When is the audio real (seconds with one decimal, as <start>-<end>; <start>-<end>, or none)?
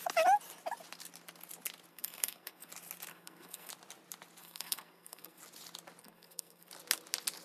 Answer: 0.0-1.9; 2.7-3.1; 3.7-4.4; 5.4-6.0; 6.7-7.4